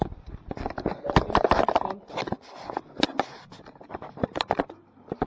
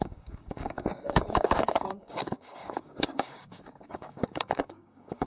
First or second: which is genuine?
first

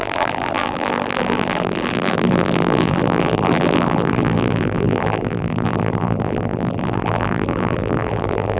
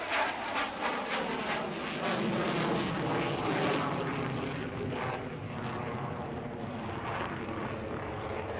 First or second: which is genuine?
second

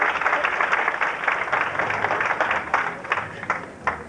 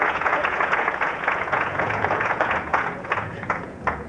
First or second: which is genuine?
first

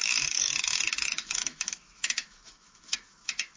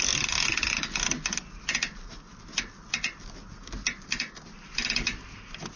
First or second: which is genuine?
second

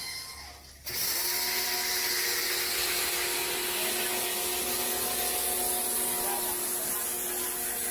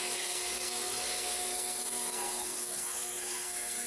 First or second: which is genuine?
first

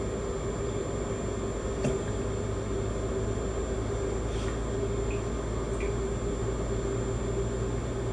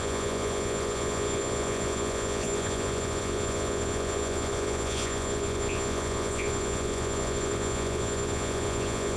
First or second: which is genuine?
first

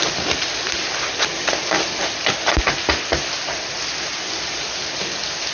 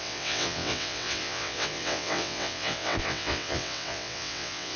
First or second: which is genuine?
first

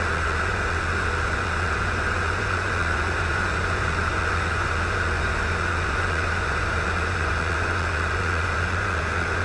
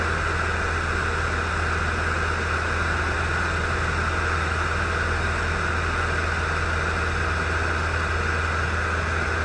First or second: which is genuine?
second